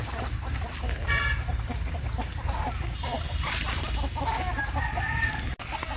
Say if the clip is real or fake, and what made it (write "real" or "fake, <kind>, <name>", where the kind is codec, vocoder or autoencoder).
real